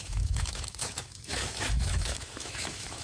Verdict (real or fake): fake